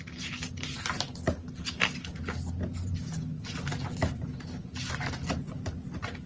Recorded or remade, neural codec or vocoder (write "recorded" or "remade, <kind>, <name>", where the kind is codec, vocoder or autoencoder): recorded